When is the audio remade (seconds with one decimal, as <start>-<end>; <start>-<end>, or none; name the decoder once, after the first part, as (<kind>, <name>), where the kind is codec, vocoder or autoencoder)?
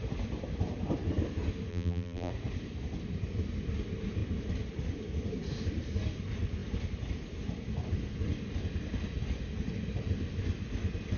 1.7-2.3 (vocoder, BigVGAN v2)